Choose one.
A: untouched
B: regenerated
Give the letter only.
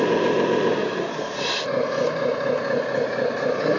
B